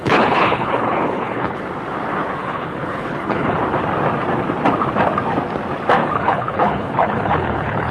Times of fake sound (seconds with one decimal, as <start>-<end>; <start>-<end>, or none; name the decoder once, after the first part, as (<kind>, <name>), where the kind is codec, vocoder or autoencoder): 0.0-1.6 (codec, HILCodec); 2.4-3.6; 6.0-7.9